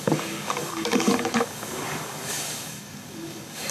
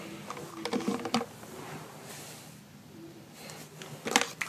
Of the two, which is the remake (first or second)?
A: first